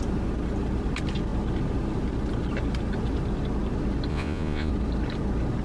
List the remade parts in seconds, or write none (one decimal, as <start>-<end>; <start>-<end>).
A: 4.1-4.7